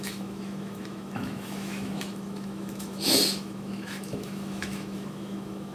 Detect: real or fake fake